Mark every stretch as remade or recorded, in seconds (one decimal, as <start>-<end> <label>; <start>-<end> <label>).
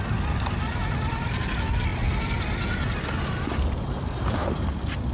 0.0-5.1 recorded